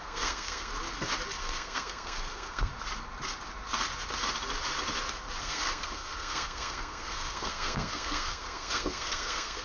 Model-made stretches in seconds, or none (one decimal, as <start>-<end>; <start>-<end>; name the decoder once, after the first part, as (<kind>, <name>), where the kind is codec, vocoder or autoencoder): 0.0-0.7 (codec, SNAC); 1.4-2.7; 5.4-9.6

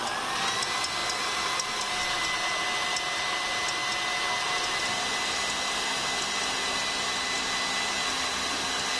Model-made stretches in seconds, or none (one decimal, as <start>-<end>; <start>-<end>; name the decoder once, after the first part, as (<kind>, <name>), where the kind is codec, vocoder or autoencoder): none

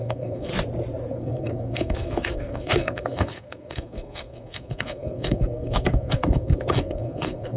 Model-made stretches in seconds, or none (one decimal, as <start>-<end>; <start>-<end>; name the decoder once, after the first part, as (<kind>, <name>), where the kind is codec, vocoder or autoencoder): 0.0-0.5 (codec, SNAC); 1.1-7.6